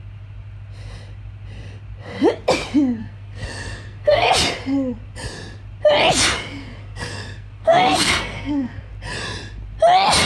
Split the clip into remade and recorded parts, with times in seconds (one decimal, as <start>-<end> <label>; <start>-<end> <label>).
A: 0.0-3.0 recorded; 3.0-4.3 remade; 4.3-6.6 recorded; 6.6-8.9 remade; 8.9-10.3 recorded